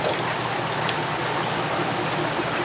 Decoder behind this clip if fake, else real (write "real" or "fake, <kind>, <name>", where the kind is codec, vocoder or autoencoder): real